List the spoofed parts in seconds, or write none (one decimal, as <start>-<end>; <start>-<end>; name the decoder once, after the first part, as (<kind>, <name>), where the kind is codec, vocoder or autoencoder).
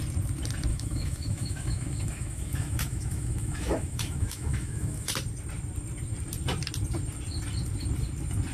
0.7-5.1 (autoencoder, DAC-VAE)